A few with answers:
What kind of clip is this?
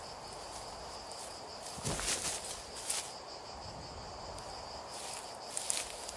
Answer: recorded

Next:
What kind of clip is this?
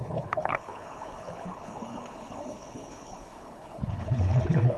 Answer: remade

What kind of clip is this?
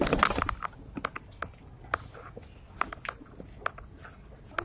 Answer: recorded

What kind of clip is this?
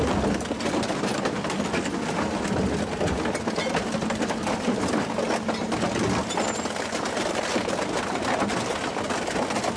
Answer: recorded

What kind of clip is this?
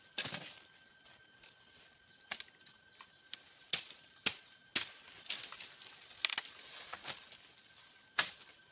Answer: recorded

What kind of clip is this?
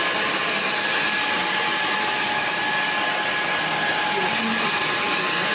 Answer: recorded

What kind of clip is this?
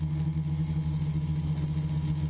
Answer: recorded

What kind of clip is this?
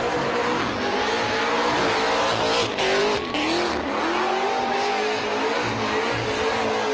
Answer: recorded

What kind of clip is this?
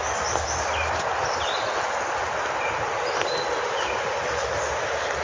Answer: recorded